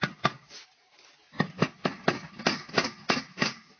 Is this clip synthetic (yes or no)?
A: no